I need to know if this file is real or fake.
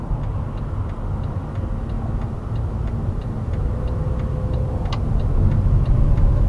real